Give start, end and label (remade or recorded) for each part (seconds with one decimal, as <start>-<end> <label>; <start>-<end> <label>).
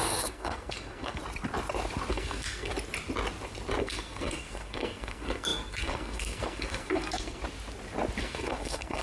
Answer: 0.0-1.2 remade; 1.2-2.1 recorded; 2.1-2.7 remade; 2.7-3.8 recorded; 3.8-7.4 remade; 7.4-8.2 recorded; 8.2-9.0 remade